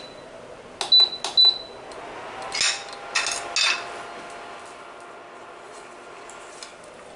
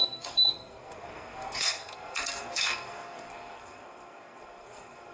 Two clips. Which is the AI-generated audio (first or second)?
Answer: second